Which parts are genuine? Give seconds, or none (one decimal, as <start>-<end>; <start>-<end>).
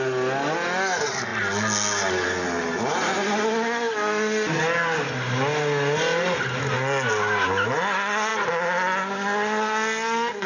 0.0-10.5